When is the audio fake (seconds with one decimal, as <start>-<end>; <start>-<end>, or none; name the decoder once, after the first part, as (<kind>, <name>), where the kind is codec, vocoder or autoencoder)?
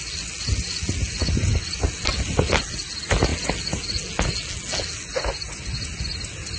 none